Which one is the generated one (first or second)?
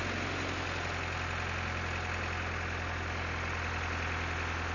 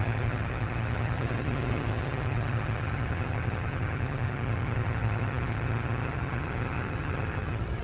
second